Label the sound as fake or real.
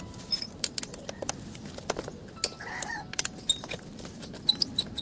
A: real